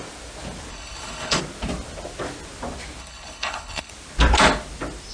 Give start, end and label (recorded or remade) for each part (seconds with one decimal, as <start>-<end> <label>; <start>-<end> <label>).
0.0-0.7 recorded; 0.7-1.4 remade; 1.4-3.0 recorded; 3.0-3.9 remade; 3.9-5.1 recorded